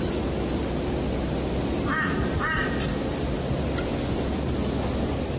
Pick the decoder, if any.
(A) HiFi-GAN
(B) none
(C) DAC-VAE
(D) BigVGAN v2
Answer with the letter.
B